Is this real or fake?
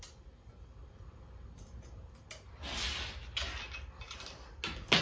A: real